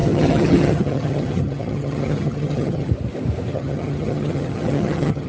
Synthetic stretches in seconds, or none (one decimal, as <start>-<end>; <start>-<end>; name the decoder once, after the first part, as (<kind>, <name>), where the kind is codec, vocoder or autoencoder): 0.0-2.9 (vocoder, HiFi-GAN); 3.5-5.3